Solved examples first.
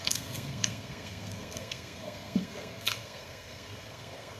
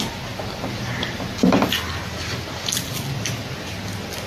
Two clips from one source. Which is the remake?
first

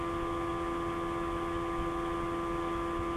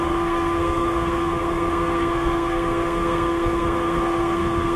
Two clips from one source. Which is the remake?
second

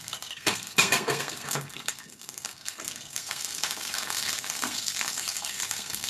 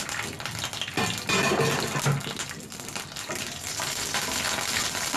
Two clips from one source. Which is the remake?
first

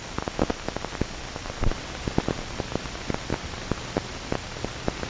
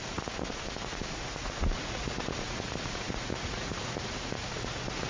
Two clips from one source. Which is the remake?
second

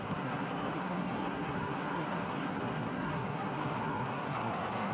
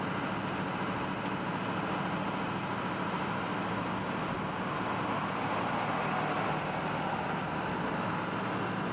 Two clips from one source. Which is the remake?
first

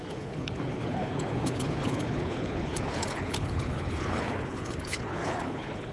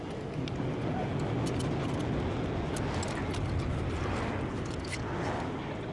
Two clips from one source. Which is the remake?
first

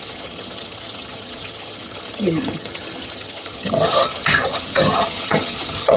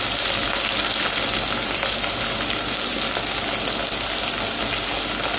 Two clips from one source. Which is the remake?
first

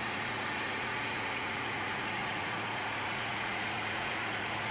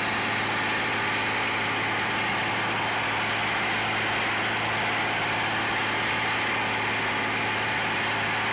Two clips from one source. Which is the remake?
first